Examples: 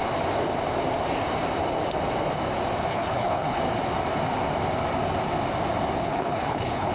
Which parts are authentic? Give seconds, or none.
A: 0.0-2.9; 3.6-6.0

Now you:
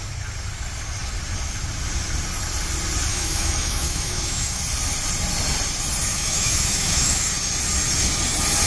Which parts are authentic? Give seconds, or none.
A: 0.0-3.1; 4.6-6.1; 7.3-8.7

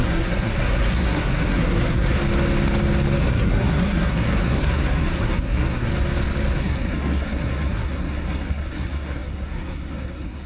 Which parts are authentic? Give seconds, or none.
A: 2.2-3.2; 5.9-6.6